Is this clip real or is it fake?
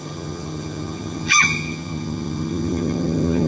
fake